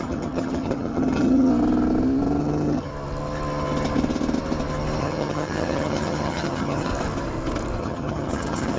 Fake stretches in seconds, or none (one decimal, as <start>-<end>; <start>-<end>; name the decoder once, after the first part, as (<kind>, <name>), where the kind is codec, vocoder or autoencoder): 0.0-1.5 (vocoder, HiFi-GAN); 2.4-2.9; 5.0-6.9; 7.8-8.8

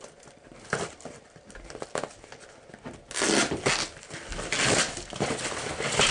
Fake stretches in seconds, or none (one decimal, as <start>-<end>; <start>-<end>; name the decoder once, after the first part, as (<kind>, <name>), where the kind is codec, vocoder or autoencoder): none

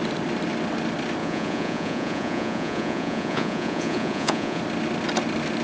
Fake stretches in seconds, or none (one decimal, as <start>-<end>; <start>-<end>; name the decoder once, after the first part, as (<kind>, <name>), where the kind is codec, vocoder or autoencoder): 1.2-4.6 (vocoder, Vocos)

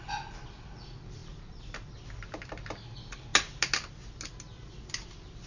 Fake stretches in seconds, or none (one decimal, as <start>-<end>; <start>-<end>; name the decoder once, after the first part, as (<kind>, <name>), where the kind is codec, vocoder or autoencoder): 1.2-1.9 (vocoder, BigVGAN v2)

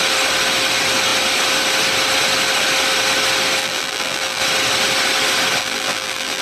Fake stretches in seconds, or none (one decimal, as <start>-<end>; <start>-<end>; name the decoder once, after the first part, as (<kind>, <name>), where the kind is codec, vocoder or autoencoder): 3.6-4.4 (vocoder, BigVGAN v2); 5.6-6.4